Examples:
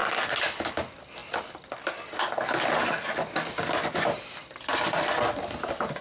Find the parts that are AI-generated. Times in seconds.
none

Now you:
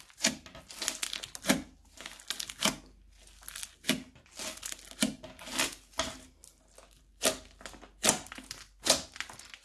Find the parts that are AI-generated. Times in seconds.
none

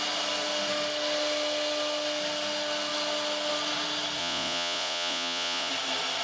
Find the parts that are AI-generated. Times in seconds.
4.2-5.7

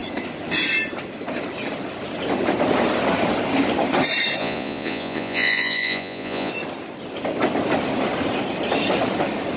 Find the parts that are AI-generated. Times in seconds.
4.4-6.5